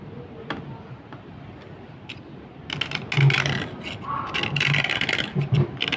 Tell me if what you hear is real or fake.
real